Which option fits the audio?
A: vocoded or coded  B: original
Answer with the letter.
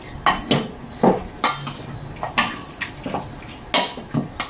B